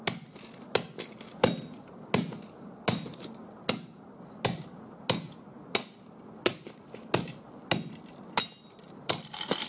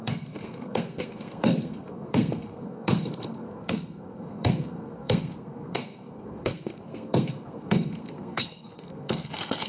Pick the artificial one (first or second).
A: second